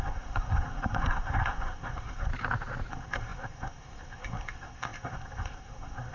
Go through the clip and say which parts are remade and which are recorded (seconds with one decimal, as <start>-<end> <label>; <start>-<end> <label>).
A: 0.0-2.3 remade; 2.3-2.9 recorded; 2.9-6.1 remade